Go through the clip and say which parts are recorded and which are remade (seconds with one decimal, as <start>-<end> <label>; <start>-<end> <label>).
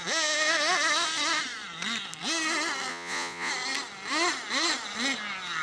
0.0-2.9 recorded; 2.9-3.5 remade; 3.5-5.6 recorded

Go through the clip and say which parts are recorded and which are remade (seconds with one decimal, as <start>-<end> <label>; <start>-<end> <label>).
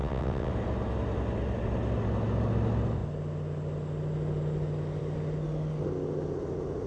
0.0-0.5 remade; 0.5-6.9 recorded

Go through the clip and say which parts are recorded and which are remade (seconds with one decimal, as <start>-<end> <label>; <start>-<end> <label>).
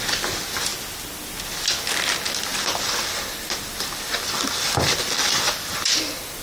0.0-2.5 recorded; 2.5-6.4 remade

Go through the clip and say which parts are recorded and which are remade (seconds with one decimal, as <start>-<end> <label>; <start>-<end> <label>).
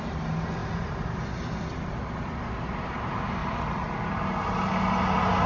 0.0-3.4 recorded; 3.4-4.2 remade; 4.2-5.5 recorded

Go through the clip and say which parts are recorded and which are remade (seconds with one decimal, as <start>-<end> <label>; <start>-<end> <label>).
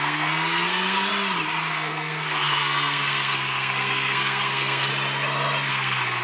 0.0-1.1 remade; 1.1-1.7 recorded; 1.7-4.9 remade; 4.9-5.7 recorded; 5.7-6.2 remade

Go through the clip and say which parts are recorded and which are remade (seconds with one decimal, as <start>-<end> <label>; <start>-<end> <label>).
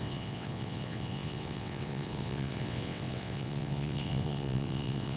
0.0-5.2 remade